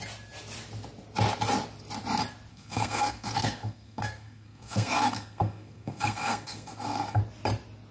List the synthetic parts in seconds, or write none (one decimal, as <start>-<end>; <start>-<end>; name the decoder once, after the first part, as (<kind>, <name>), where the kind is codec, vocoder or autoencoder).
2.5-7.2 (codec, SNAC)